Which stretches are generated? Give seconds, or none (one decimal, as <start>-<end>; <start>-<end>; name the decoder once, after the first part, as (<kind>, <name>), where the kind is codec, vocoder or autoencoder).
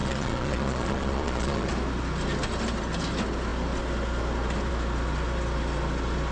0.0-1.7 (vocoder, Vocos)